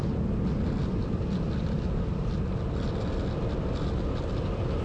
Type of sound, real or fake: real